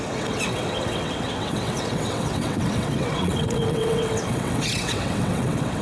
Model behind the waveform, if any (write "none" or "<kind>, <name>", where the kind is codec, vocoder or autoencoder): vocoder, WaveNeXt